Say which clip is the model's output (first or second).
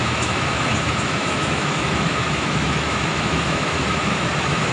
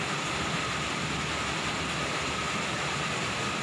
first